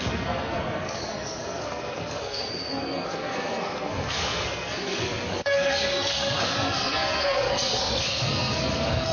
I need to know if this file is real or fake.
fake